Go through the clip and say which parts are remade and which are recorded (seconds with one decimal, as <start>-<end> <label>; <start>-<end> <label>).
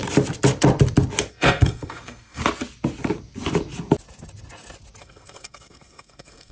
0.0-1.3 recorded; 1.3-2.4 remade; 2.4-5.0 recorded; 5.0-6.5 remade